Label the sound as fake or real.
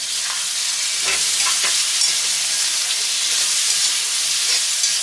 real